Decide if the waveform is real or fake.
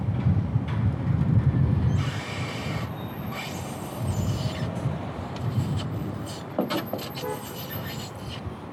fake